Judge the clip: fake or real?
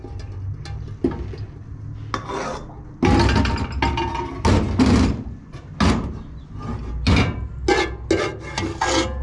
real